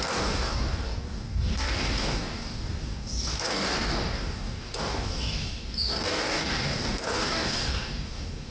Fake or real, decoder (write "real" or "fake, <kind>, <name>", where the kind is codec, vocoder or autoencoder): fake, codec, DAC